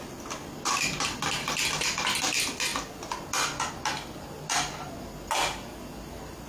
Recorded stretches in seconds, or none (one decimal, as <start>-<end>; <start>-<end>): 0.0-6.5